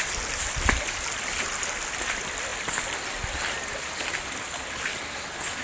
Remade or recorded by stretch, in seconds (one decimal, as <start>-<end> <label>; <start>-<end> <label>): 0.0-5.6 recorded